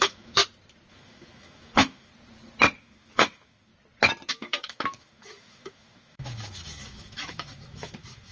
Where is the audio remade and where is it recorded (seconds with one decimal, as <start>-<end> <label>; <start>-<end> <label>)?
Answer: 0.0-0.4 remade; 0.4-0.9 recorded; 0.9-2.1 remade; 2.1-2.8 recorded; 2.8-3.7 remade; 3.7-4.3 recorded; 4.3-8.3 remade